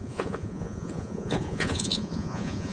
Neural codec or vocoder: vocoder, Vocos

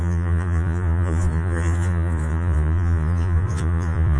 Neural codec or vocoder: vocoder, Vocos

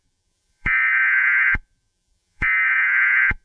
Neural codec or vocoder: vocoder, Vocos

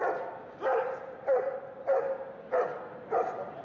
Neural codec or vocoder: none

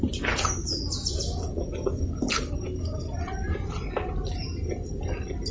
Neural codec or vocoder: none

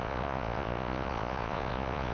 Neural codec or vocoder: vocoder, Vocos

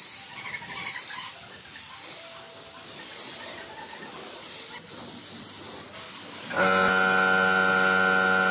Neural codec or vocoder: none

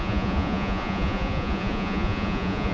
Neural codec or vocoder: vocoder, Vocos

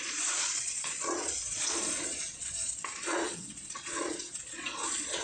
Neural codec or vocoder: vocoder, Vocos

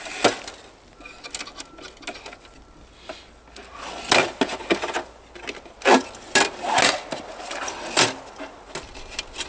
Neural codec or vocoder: none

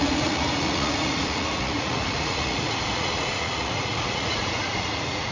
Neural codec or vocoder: vocoder, Vocos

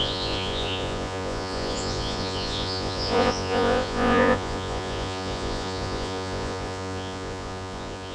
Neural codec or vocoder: vocoder, Vocos